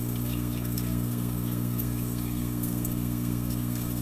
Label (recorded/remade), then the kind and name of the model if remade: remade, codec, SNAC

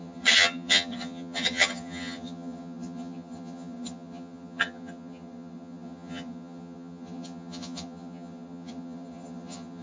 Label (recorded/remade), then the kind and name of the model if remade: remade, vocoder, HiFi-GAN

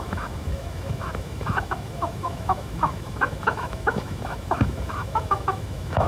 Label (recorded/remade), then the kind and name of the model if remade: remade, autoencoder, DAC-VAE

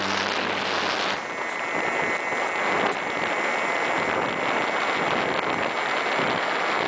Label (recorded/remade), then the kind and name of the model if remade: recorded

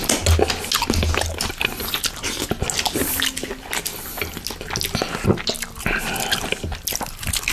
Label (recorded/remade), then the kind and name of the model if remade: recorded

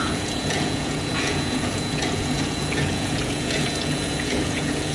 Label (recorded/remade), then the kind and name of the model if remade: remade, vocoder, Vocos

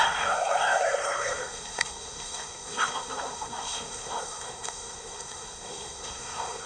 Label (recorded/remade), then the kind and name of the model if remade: remade, codec, SNAC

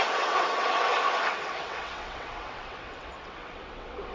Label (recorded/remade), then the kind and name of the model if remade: remade, vocoder, WaveNeXt